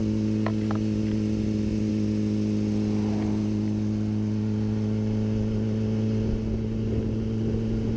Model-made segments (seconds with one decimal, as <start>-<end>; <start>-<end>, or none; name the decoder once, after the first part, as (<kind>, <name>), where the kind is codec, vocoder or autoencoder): none